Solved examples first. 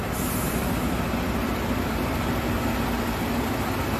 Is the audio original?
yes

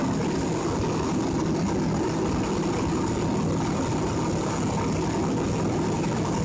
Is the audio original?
yes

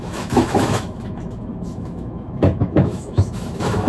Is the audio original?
no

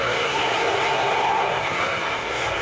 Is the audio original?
no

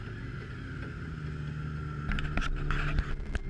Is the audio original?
yes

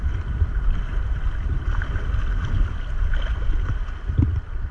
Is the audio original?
yes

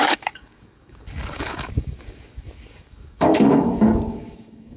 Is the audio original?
no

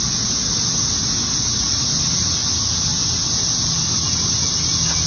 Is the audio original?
yes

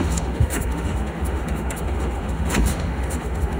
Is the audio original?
no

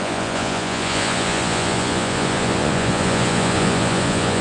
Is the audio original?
no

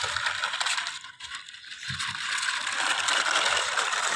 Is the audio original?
yes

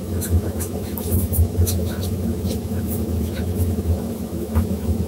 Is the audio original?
no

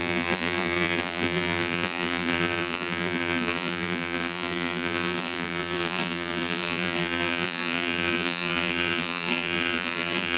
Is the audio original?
no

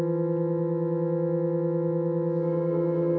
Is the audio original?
yes